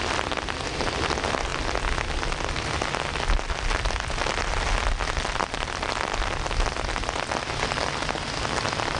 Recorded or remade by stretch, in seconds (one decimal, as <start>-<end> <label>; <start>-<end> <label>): 0.0-9.0 recorded